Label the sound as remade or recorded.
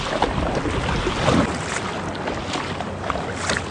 recorded